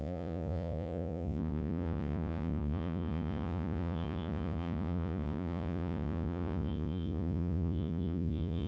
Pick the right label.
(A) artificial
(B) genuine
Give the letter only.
A